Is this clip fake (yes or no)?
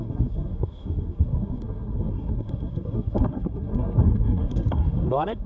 yes